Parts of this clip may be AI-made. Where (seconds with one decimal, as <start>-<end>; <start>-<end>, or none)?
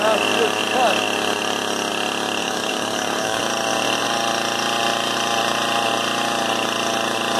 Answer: 2.4-3.4